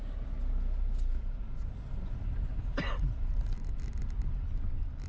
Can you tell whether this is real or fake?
real